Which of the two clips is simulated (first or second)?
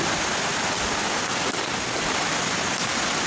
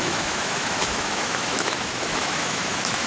second